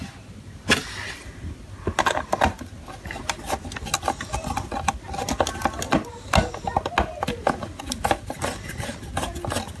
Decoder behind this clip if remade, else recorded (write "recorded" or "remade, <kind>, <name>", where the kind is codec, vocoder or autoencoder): recorded